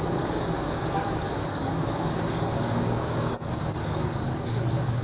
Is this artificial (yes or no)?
yes